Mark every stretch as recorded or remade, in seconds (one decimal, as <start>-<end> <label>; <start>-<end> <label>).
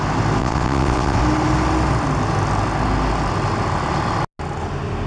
0.0-0.4 recorded; 0.4-1.2 remade; 1.2-5.1 recorded